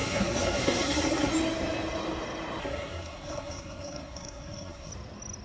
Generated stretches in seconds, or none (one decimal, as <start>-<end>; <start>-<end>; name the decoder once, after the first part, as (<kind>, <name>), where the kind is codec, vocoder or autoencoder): 0.0-1.3 (codec, SNAC); 2.6-4.9